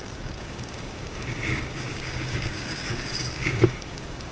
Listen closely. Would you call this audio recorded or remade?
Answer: remade